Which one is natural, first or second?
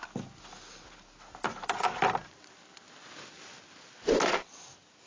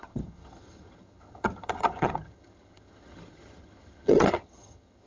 first